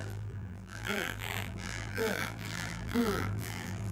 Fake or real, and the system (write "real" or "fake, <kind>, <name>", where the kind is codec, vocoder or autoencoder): fake, vocoder, BigVGAN v2